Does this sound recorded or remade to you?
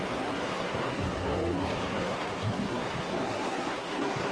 remade